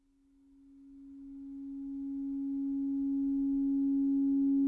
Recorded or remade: recorded